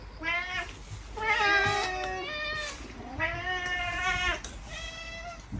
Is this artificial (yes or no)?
no